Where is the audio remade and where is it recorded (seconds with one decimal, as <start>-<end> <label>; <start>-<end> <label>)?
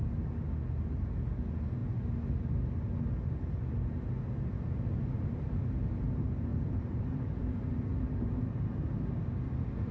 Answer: 0.0-6.5 recorded; 6.5-7.5 remade; 7.5-9.9 recorded